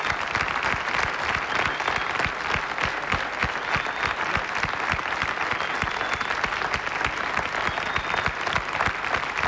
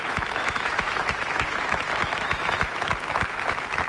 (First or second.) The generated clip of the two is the second